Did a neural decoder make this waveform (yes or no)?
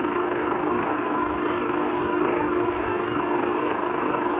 yes